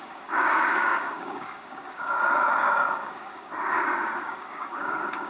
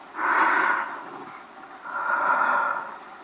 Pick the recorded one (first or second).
second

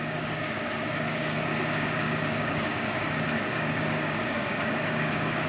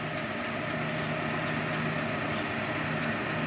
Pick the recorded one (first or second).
second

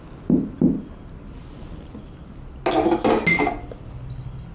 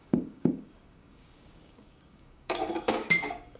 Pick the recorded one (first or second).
first